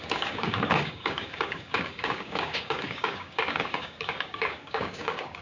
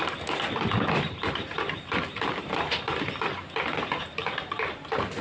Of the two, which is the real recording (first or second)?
second